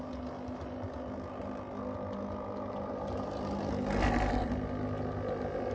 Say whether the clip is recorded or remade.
recorded